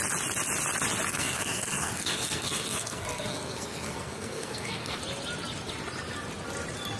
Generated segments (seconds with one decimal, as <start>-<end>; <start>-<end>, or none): 1.1-5.0